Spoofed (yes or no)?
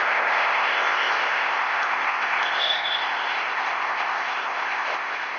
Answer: yes